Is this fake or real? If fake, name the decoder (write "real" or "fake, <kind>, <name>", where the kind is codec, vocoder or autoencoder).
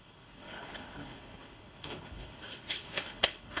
fake, codec, HILCodec